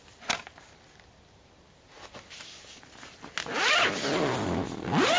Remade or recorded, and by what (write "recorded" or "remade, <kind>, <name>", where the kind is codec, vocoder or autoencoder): recorded